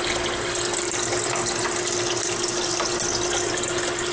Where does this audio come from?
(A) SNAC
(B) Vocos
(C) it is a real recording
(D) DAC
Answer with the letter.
C